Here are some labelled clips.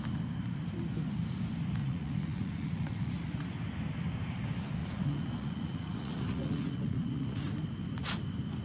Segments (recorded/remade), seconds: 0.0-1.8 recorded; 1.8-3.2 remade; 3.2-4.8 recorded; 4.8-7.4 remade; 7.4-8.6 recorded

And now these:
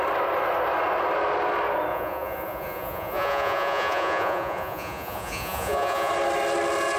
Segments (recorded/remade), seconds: 0.0-1.9 recorded; 1.9-6.1 remade; 6.1-7.0 recorded

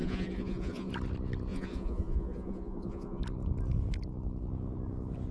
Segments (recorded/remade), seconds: 0.0-0.9 remade; 0.9-1.5 recorded; 1.5-3.2 remade; 3.2-5.3 recorded

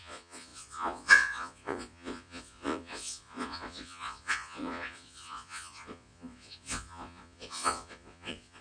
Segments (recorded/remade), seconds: 0.0-8.6 remade

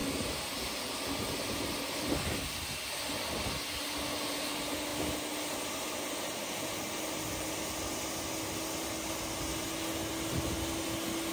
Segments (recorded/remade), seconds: 0.0-11.3 recorded